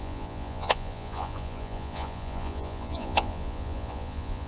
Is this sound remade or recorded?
remade